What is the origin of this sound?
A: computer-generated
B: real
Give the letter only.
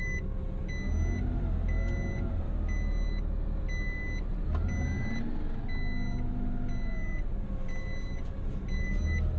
B